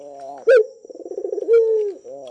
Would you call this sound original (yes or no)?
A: yes